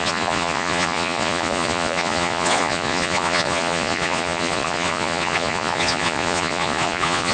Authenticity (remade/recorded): remade